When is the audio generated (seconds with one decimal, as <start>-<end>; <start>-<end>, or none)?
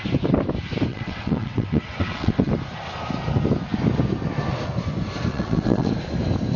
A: 0.9-2.5; 5.3-5.9